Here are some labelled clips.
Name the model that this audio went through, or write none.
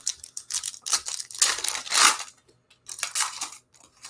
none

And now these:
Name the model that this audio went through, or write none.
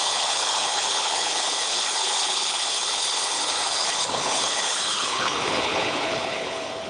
codec, HILCodec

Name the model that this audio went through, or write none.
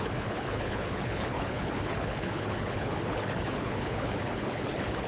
codec, HILCodec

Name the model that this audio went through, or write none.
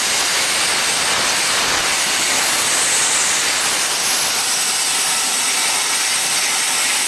none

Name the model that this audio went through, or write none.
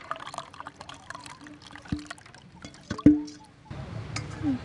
none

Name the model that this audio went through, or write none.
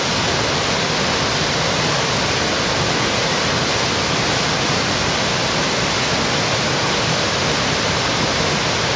none